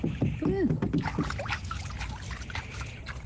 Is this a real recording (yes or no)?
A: yes